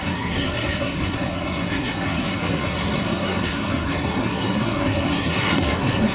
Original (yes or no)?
no